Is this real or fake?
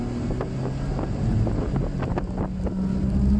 real